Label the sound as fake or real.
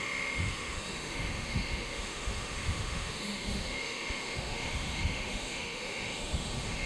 fake